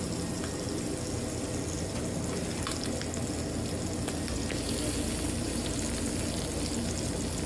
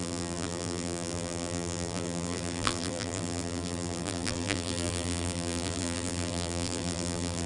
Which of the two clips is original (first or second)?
first